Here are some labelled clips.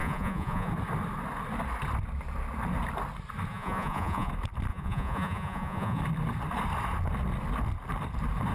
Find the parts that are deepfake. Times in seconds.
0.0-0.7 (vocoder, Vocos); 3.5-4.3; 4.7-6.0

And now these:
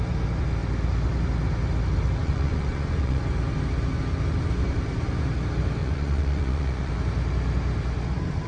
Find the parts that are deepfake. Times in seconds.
2.2-3.2 (vocoder, Vocos); 5.8-6.9

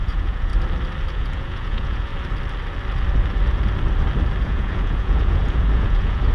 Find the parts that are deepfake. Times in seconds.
0.0-0.5 (vocoder, Vocos); 1.1-2.1; 4.4-6.3

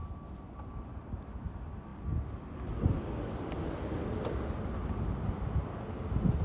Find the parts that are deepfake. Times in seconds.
none

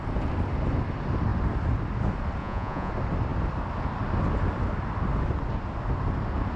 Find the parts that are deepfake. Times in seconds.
2.4-2.9 (vocoder, Vocos)

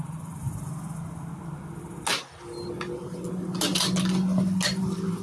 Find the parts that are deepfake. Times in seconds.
none